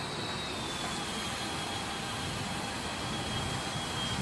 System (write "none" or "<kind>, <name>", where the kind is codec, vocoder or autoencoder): none